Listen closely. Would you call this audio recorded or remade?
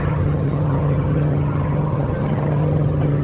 remade